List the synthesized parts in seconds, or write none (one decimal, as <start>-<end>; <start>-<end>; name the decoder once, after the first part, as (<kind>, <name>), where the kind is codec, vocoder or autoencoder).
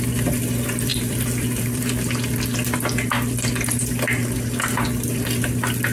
0.9-1.9 (vocoder, BigVGAN v2)